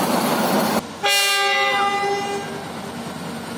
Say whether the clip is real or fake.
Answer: real